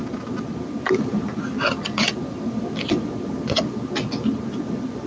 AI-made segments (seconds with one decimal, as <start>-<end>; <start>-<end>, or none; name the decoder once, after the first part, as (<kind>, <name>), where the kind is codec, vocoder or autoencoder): none